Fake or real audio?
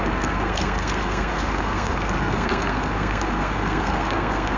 fake